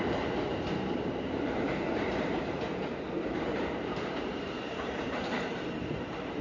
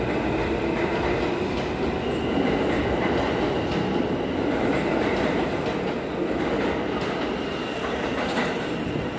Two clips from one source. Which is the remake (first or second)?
first